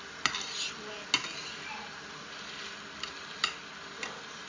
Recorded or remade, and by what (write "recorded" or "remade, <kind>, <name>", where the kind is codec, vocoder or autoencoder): recorded